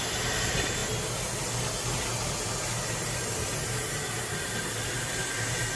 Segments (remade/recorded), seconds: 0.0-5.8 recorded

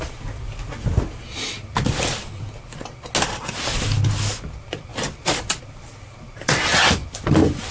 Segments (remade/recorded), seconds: 0.0-7.7 recorded

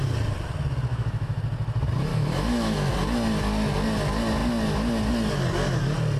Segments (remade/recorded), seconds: 0.0-0.9 recorded; 0.9-1.4 remade; 1.4-2.1 recorded; 2.1-2.9 remade; 2.9-6.2 recorded

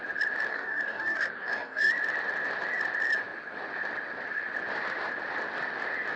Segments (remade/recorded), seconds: 0.0-0.5 recorded; 0.5-1.9 remade; 1.9-6.2 recorded

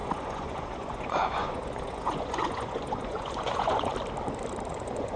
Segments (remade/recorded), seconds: 0.0-3.9 remade; 3.9-4.7 recorded; 4.7-5.2 remade

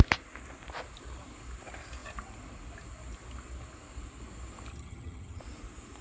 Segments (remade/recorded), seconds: 0.0-4.7 recorded; 4.7-5.4 remade; 5.4-6.0 recorded

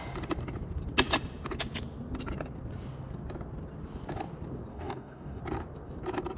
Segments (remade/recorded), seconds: 0.0-4.7 recorded; 4.7-5.4 remade; 5.4-6.4 recorded